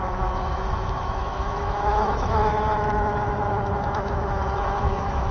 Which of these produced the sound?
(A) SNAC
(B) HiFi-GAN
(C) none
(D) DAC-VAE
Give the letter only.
D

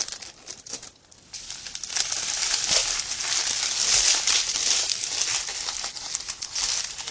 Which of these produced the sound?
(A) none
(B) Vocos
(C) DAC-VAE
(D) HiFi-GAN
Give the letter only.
A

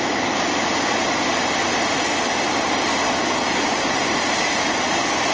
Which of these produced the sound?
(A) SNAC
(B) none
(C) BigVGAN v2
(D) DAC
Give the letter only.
B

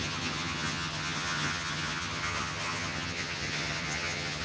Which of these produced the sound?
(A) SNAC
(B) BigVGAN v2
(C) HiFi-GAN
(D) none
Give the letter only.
C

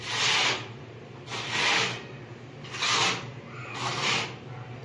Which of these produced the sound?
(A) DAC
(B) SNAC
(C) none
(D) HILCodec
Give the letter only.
C